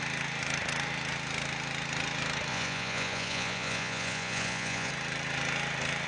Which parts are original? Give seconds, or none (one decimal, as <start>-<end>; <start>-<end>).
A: 0.0-2.5; 4.9-6.1

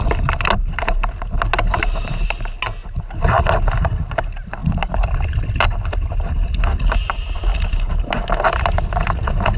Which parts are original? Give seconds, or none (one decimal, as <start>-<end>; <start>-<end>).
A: 0.0-9.6